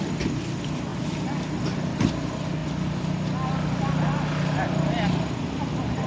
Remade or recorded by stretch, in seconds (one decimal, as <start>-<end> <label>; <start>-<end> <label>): 0.0-6.1 recorded